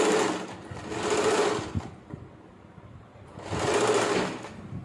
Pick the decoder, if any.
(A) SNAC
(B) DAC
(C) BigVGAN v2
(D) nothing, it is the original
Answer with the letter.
D